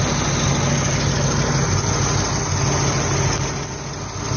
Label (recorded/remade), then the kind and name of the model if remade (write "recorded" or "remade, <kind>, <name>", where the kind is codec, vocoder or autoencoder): recorded